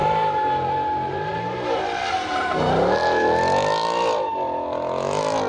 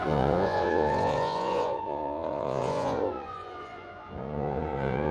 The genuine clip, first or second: first